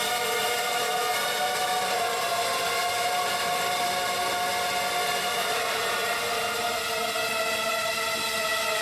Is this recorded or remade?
recorded